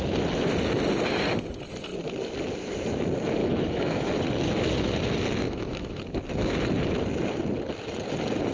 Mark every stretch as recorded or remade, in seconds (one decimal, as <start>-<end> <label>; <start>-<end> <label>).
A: 0.0-3.4 recorded; 3.4-4.1 remade; 4.1-5.4 recorded; 5.4-6.0 remade; 6.0-8.5 recorded

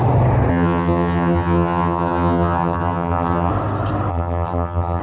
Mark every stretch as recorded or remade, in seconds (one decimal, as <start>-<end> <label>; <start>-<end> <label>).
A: 0.0-0.5 recorded; 0.5-3.5 remade; 3.5-4.1 recorded; 4.1-5.0 remade

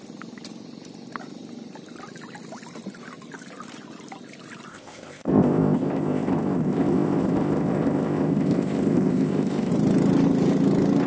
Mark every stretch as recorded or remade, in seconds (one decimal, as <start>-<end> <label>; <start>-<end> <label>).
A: 0.0-4.7 recorded; 4.7-9.7 remade; 9.7-11.1 recorded

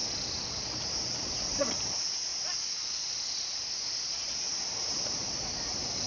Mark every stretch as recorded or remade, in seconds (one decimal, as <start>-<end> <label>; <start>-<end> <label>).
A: 0.0-0.5 recorded; 0.5-2.3 remade; 2.3-4.2 recorded; 4.2-6.1 remade

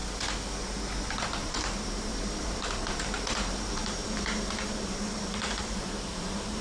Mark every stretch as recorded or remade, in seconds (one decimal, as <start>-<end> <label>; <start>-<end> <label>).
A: 0.0-1.1 recorded; 1.1-6.6 remade

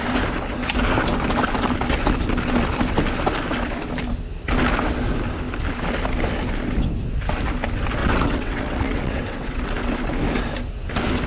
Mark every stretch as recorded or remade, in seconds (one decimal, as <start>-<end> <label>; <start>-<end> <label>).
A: 0.0-8.0 recorded; 8.0-9.6 remade; 9.6-11.3 recorded